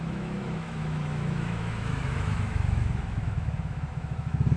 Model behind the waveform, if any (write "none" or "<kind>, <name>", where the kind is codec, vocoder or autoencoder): autoencoder, DAC-VAE